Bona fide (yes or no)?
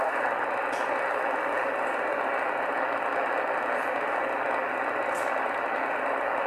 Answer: yes